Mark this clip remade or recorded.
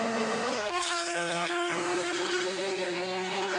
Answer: remade